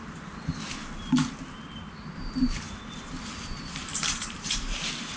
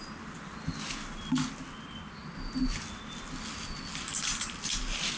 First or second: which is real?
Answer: second